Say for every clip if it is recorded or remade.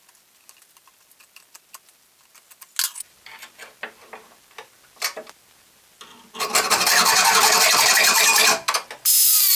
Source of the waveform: recorded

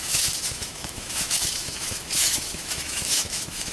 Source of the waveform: remade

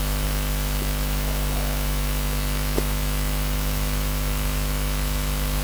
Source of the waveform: remade